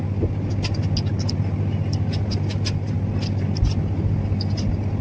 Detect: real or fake real